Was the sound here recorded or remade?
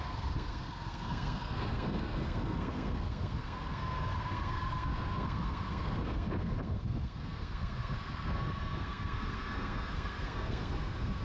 remade